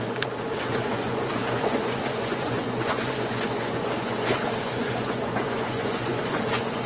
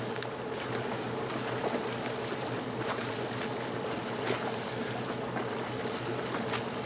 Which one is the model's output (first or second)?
first